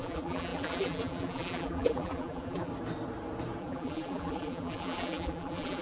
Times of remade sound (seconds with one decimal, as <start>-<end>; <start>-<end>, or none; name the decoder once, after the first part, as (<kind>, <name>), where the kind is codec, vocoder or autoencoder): 0.0-2.7 (vocoder, BigVGAN v2); 3.6-5.8